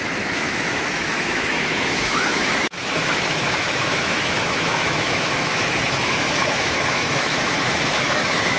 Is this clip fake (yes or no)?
yes